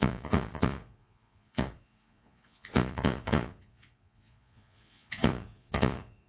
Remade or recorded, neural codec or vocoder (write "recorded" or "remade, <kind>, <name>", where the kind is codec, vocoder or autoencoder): remade, vocoder, Vocos